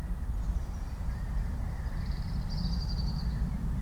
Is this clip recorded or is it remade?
recorded